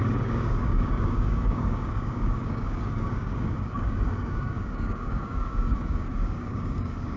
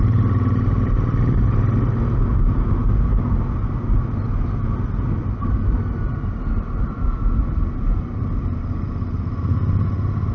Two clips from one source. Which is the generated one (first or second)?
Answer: first